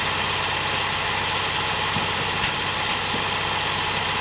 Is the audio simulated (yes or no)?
no